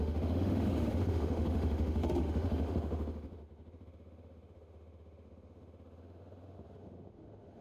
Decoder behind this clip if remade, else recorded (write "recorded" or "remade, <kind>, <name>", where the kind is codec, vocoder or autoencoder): remade, autoencoder, DAC-VAE